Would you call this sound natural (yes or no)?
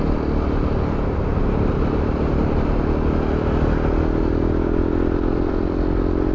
yes